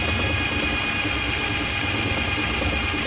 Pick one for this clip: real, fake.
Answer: real